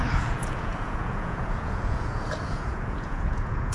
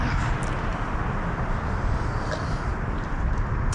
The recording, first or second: second